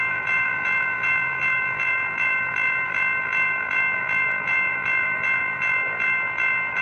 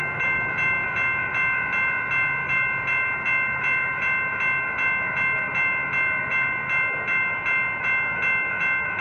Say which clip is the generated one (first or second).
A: first